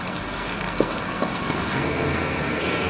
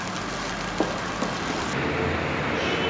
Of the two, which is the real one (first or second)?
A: second